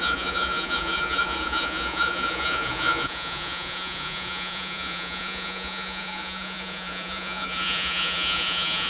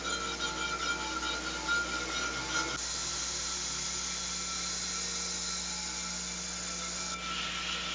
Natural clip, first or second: second